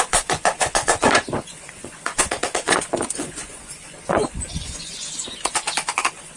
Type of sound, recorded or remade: remade